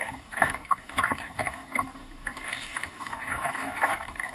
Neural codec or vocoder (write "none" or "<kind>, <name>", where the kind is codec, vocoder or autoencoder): codec, DAC